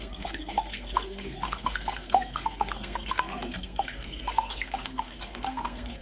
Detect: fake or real fake